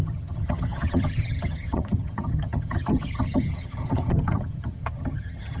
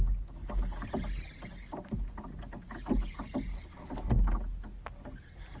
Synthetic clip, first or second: first